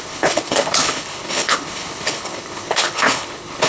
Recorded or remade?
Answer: remade